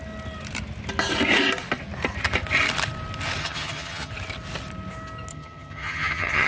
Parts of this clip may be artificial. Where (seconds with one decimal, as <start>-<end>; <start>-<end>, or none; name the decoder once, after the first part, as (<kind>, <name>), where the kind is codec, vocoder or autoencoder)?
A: 3.4-4.1 (vocoder, HiFi-GAN); 5.3-6.5